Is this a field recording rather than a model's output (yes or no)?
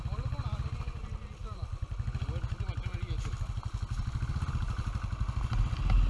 yes